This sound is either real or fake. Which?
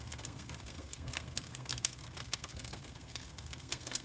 fake